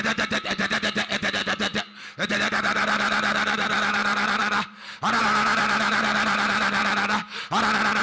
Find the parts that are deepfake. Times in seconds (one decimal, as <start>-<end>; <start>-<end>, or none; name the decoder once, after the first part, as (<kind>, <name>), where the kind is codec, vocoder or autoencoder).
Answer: 0.0-1.4 (vocoder, BigVGAN v2); 2.3-4.4; 5.2-6.8